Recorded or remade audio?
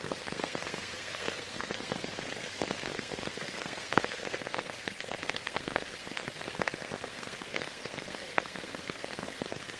remade